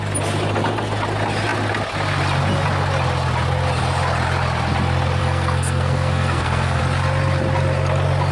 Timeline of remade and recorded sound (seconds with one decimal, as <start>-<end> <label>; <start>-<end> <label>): 0.0-5.2 recorded; 5.2-6.8 remade; 6.8-8.3 recorded